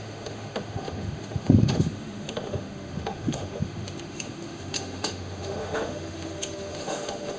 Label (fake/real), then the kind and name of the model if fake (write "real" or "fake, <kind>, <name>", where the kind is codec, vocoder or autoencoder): fake, autoencoder, DAC-VAE